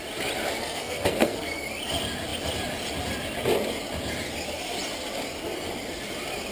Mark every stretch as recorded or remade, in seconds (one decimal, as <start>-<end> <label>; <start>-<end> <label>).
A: 0.0-0.6 recorded; 0.6-1.6 remade; 1.6-6.5 recorded